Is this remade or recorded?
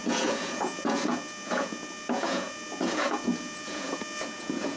remade